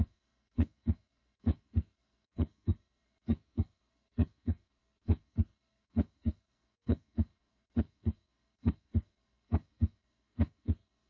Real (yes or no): no